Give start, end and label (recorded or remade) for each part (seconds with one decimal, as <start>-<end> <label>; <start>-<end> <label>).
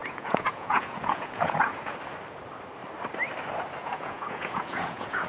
0.0-1.8 remade; 1.8-3.8 recorded; 3.8-5.3 remade